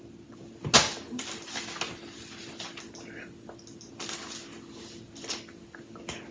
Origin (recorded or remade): recorded